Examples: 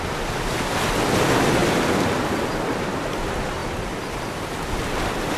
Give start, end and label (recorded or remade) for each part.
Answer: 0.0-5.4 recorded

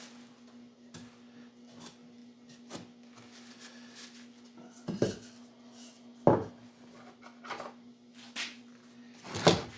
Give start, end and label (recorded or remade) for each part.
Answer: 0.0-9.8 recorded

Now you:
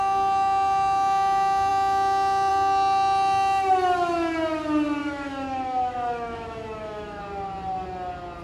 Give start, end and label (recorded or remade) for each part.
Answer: 0.0-5.0 recorded; 5.0-7.2 remade; 7.2-8.4 recorded